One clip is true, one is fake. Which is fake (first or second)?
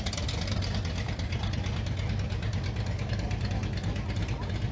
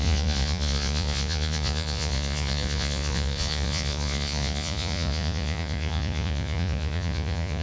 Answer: second